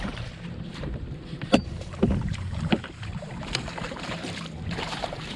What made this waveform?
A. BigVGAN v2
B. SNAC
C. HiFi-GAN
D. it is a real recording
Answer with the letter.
A